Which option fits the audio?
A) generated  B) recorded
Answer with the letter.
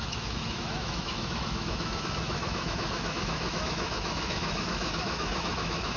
A